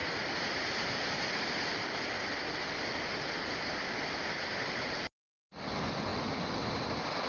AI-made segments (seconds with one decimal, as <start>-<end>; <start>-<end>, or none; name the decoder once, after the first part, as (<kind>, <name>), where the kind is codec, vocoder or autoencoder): none